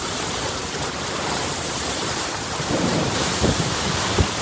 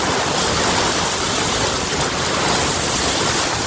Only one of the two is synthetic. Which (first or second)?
first